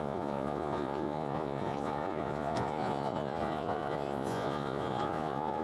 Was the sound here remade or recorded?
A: remade